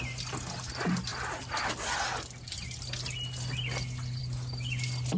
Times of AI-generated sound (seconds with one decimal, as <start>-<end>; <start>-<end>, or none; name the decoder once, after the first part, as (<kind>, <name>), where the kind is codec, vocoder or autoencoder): none